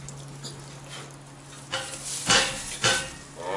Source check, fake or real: real